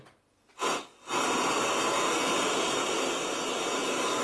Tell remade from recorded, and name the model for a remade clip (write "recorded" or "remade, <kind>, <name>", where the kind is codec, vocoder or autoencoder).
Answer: recorded